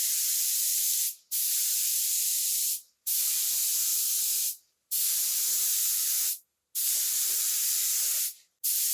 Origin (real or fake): fake